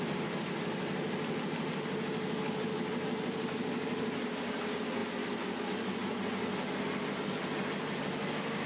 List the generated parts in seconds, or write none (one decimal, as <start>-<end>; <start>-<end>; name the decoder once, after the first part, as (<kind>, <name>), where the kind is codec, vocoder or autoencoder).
none